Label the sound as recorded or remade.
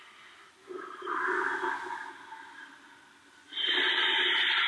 recorded